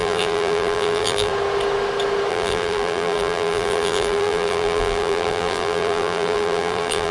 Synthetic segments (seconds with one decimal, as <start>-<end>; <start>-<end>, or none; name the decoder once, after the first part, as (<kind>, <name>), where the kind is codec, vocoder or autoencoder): 0.0-1.3 (vocoder, BigVGAN v2); 2.3-7.1